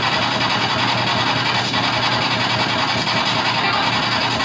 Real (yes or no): yes